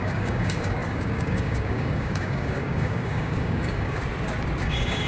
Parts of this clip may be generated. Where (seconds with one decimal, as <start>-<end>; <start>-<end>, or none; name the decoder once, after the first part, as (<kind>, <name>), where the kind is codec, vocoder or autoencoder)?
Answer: 0.0-4.0 (codec, DAC); 4.6-5.1